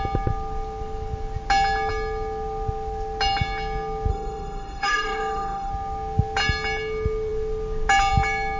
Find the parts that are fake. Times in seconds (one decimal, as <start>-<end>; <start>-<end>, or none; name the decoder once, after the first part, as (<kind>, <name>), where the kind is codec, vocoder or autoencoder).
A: 4.1-5.7 (autoencoder, DAC-VAE)